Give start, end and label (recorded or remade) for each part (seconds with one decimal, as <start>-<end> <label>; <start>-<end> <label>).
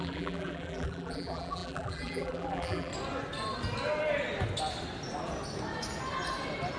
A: 0.0-2.9 remade; 2.9-6.8 recorded